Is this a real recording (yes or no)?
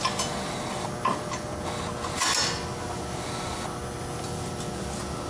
yes